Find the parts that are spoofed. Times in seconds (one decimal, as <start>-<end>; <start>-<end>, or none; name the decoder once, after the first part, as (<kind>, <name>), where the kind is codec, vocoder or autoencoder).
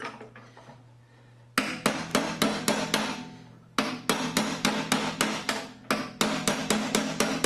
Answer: none